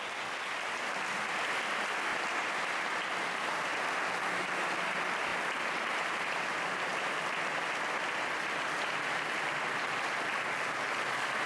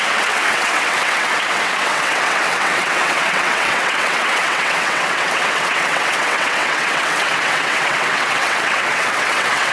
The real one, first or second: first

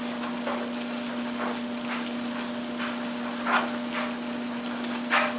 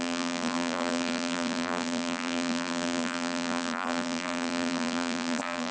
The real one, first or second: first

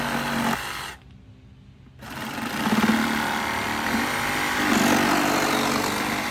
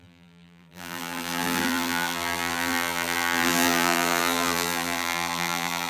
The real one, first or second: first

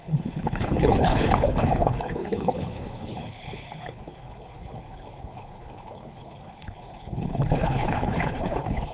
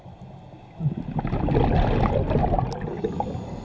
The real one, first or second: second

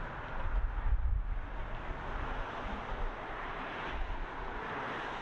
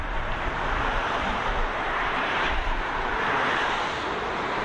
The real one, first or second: first